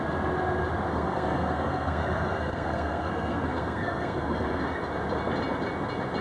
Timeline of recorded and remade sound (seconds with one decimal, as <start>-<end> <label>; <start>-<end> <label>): 0.0-0.9 recorded; 0.9-4.6 remade; 4.6-6.2 recorded